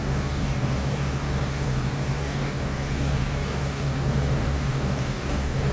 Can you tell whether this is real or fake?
fake